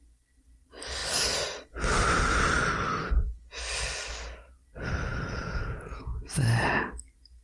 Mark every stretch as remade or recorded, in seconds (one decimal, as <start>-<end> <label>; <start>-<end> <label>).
0.0-5.1 recorded; 5.1-6.3 remade; 6.3-7.4 recorded